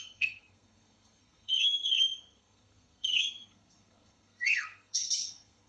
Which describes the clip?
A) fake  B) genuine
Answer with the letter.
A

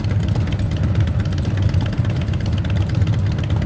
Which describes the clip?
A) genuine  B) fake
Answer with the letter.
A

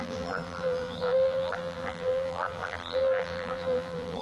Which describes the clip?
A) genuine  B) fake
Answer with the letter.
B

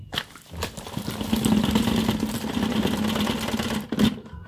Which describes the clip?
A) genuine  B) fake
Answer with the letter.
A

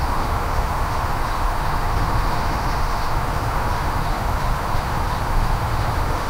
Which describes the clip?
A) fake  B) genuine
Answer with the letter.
A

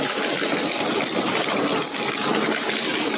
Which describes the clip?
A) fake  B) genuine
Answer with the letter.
B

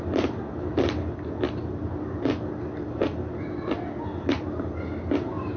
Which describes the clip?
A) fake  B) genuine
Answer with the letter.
B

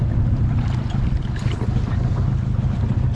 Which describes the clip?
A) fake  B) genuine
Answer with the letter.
B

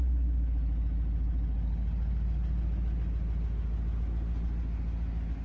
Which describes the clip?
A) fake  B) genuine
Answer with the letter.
B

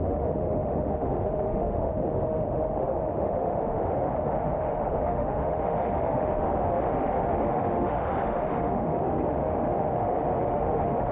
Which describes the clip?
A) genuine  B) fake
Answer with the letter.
B